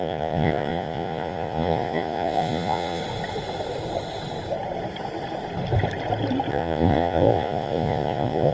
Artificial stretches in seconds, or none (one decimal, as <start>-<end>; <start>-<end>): 0.0-3.0; 6.5-8.5